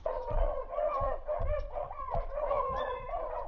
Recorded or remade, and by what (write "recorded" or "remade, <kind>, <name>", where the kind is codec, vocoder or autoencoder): remade, vocoder, Vocos